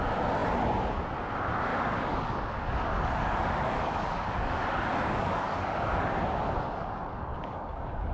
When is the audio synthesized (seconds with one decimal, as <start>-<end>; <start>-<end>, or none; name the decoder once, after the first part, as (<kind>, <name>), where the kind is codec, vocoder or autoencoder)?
1.7-6.0 (codec, DAC); 7.1-8.1